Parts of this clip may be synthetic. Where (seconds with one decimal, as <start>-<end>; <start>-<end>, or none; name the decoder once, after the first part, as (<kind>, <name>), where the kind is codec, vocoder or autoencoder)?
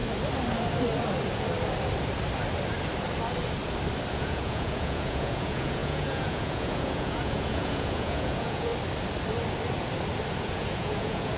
4.1-8.7 (vocoder, Vocos); 10.4-11.4